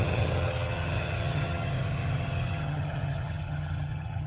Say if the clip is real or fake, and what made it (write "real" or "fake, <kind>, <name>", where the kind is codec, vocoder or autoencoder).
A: fake, vocoder, HiFi-GAN